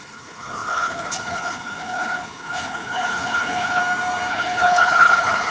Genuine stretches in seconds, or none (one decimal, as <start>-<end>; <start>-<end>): 3.8-4.3